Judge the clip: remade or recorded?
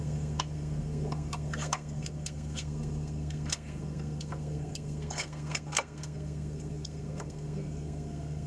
remade